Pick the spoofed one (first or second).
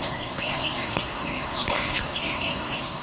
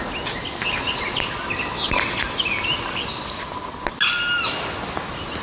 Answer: first